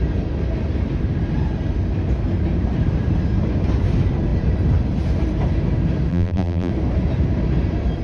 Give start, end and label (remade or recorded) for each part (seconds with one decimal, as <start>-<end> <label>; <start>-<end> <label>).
0.0-6.1 recorded; 6.1-6.7 remade; 6.7-8.0 recorded